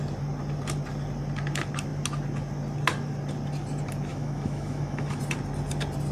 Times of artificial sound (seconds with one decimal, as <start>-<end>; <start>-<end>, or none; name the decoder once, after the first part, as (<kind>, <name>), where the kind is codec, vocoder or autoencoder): 4.1-5.2 (autoencoder, DAC-VAE)